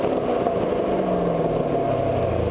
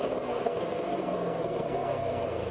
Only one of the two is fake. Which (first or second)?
second